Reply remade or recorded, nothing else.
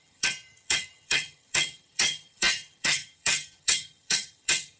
remade